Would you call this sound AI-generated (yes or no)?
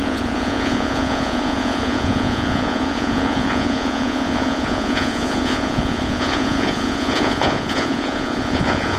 yes